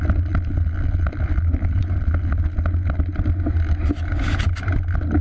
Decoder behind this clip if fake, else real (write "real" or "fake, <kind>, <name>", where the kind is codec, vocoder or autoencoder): real